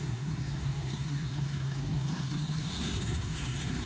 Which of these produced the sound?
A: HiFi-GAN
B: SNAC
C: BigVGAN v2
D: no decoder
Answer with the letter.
B